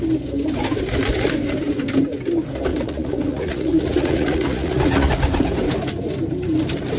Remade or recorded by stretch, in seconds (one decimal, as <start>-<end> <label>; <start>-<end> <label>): 0.0-2.7 recorded; 2.7-5.1 remade; 5.1-7.0 recorded